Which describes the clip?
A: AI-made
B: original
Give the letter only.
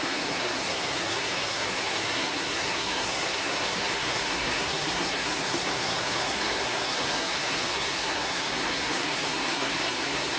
A